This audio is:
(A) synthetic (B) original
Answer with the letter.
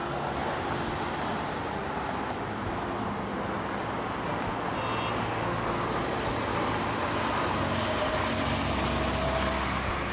B